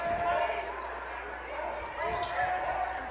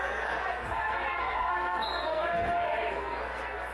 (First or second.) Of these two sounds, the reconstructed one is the second